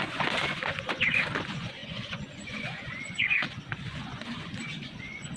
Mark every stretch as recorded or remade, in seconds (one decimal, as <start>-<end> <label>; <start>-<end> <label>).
0.0-5.4 remade